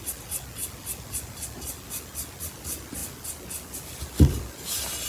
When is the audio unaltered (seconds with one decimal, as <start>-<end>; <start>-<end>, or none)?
0.0-5.1